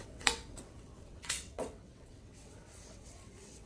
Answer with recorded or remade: remade